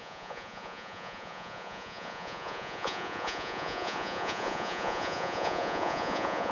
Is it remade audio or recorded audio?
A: remade